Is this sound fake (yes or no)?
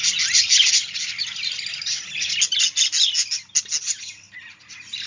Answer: no